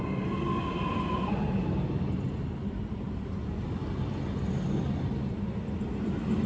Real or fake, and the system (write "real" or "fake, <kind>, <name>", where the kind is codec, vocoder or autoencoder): real